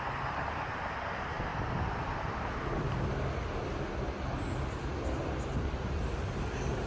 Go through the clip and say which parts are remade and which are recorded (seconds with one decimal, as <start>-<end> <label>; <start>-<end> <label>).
0.0-1.5 remade; 1.5-5.6 recorded; 5.6-6.9 remade